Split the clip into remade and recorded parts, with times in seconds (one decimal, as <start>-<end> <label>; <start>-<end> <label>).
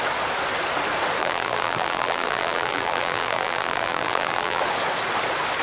0.0-1.2 recorded; 1.2-4.6 remade; 4.6-5.6 recorded